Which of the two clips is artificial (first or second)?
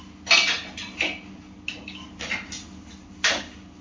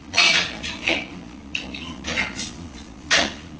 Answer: second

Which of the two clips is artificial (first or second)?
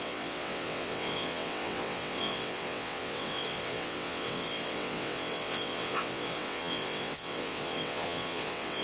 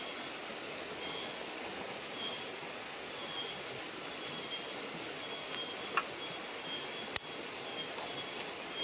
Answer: first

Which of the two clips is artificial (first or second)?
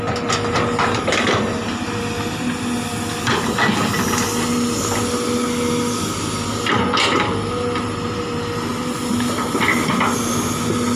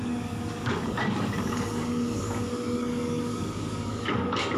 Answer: second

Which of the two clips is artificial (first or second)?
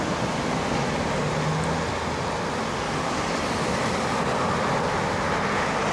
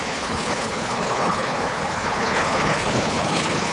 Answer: second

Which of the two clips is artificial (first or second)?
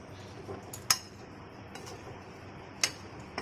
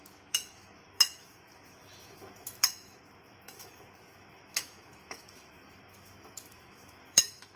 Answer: second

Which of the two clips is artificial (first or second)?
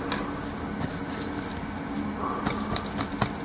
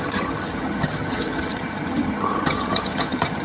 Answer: second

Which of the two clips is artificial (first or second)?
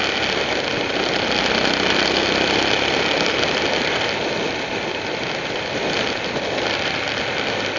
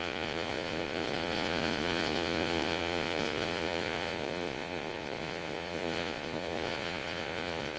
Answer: second